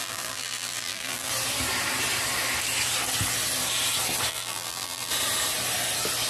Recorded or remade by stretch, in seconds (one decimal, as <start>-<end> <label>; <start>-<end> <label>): 0.0-1.3 remade; 1.3-4.3 recorded; 4.3-5.1 remade; 5.1-6.3 recorded